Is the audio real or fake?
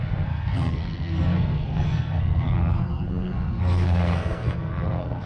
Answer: fake